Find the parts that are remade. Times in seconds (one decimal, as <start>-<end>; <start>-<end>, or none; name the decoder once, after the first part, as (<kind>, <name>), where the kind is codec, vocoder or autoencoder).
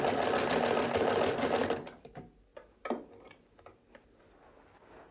none